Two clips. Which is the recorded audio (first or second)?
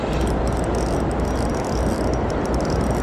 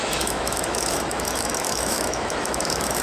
first